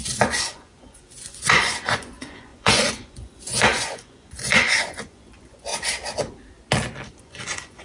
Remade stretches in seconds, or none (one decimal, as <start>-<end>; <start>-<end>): 0.0-5.7; 7.2-7.8